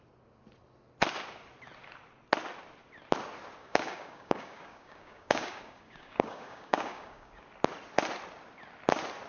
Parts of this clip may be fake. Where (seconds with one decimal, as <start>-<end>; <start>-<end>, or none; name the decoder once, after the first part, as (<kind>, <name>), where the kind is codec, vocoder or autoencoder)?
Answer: 3.6-7.4 (codec, DAC)